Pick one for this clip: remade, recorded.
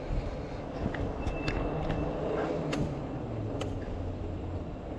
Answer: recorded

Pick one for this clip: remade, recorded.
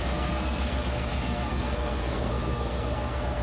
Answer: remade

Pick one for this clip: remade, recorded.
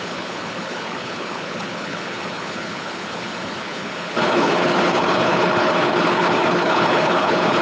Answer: remade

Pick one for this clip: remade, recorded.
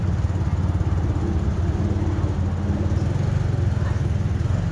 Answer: recorded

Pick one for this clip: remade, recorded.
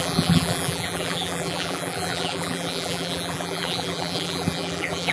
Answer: remade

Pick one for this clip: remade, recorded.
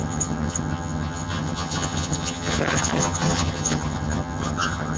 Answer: remade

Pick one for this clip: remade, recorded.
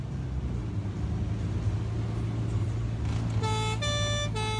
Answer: recorded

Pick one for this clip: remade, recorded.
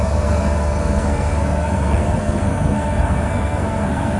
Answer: remade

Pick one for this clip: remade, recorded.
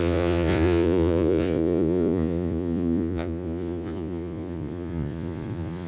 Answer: remade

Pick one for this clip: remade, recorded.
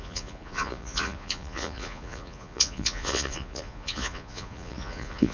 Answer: remade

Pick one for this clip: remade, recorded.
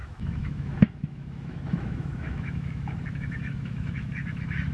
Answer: remade